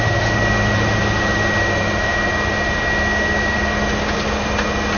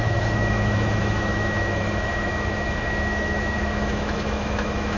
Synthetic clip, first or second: second